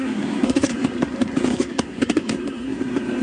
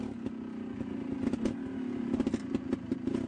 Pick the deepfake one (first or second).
first